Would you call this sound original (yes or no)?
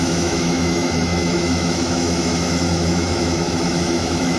no